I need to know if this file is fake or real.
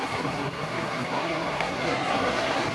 fake